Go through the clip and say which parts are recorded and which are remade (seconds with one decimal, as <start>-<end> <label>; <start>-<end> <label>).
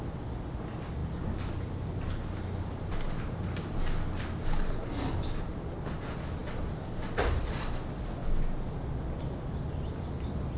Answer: 0.0-10.6 recorded